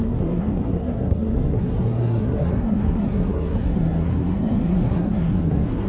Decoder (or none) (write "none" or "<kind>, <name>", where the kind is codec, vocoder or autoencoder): codec, SNAC